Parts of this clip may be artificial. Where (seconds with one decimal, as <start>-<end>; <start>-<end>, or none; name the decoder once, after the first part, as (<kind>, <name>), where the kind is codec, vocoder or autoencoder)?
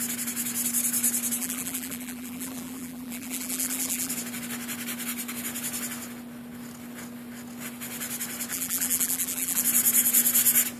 1.4-4.1 (vocoder, BigVGAN v2); 8.5-9.6